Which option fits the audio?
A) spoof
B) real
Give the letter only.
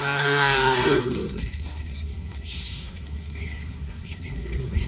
A